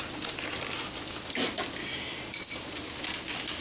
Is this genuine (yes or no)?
yes